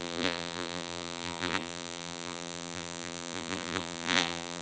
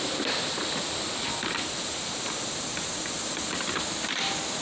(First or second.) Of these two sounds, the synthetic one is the first